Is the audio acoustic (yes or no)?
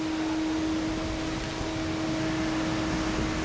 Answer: yes